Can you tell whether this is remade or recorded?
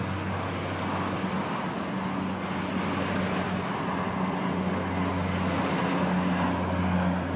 recorded